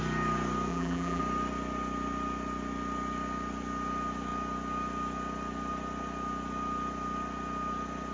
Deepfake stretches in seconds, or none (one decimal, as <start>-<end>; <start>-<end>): 0.7-1.2